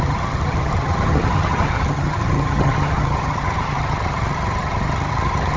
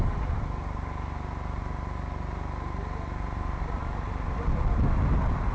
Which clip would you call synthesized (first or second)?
first